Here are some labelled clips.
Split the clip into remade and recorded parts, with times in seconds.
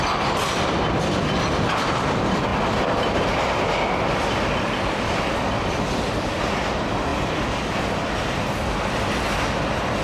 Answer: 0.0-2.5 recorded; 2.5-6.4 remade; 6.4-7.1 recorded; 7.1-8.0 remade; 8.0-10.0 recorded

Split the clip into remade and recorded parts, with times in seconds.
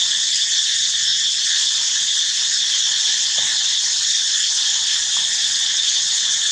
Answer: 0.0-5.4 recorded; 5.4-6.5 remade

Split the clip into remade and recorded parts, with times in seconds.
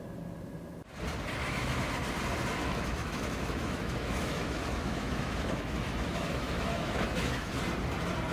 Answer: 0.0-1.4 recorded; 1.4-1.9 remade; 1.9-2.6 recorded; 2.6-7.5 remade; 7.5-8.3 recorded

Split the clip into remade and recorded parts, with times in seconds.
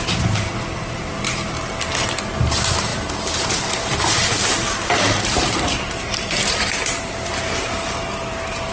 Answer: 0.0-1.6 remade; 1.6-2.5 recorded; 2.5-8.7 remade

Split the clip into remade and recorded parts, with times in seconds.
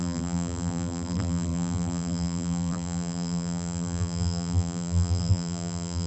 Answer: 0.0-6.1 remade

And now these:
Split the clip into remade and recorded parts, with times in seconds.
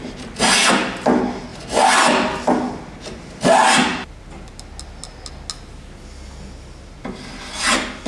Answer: 0.0-8.1 recorded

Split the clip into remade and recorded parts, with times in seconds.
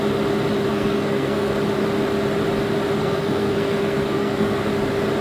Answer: 0.0-0.7 recorded; 0.7-1.5 remade; 1.5-3.0 recorded; 3.0-4.7 remade; 4.7-5.2 recorded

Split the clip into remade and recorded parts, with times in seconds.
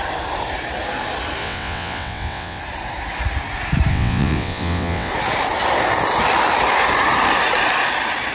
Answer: 0.0-1.4 recorded; 1.4-2.6 remade; 2.6-3.9 recorded; 3.9-5.1 remade; 5.1-8.3 recorded